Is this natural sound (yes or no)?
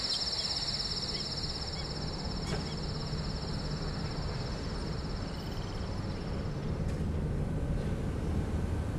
yes